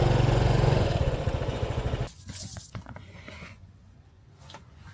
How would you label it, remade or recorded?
remade